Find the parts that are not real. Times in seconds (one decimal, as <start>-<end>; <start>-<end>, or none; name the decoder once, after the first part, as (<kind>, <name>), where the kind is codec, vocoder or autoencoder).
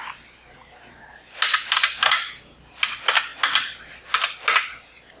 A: none